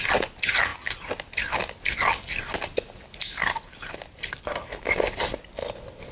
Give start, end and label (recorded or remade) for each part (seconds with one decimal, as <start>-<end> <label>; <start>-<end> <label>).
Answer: 0.0-6.1 recorded